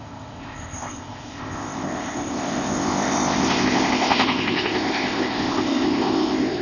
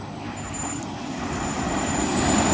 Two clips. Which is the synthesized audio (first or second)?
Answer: first